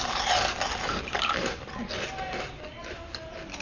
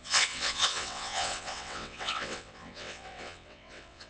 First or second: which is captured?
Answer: first